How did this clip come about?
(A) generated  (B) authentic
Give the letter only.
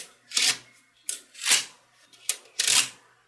B